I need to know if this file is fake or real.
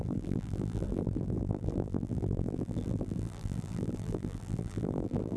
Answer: fake